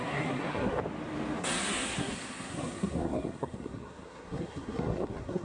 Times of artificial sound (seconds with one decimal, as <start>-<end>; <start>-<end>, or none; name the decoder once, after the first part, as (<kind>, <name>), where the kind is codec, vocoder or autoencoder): 0.0-0.8 (codec, SNAC); 1.4-5.4